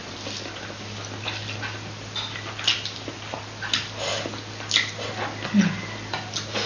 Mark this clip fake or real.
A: real